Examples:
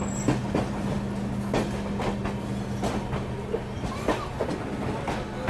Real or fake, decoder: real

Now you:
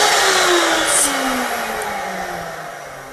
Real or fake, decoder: real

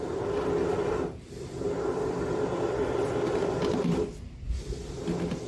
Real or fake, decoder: real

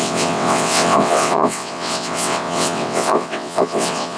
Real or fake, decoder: fake, vocoder, WaveNeXt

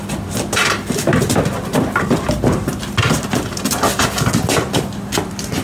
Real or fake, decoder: real